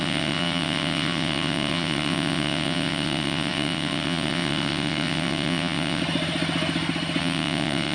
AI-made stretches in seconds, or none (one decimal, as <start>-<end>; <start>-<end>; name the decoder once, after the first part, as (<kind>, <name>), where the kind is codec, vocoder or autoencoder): 0.0-6.0 (vocoder, WaveNeXt); 7.2-7.9